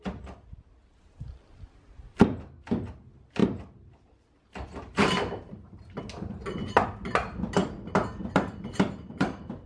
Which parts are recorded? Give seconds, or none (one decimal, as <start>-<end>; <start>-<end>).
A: 0.0-3.4; 6.0-8.2